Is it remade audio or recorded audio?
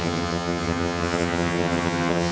remade